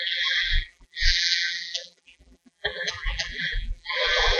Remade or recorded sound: remade